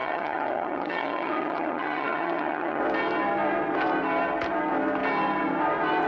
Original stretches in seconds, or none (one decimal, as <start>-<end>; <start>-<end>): 2.8-6.1